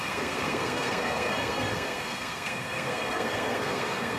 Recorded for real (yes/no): no